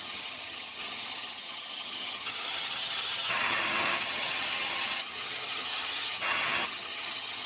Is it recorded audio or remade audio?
remade